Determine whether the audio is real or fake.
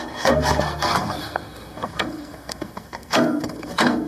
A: fake